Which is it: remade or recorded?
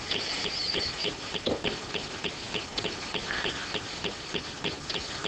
recorded